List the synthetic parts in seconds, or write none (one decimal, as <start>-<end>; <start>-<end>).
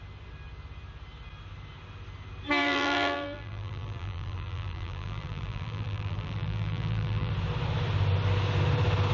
2.6-7.3